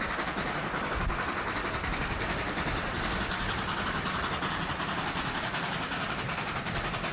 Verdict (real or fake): real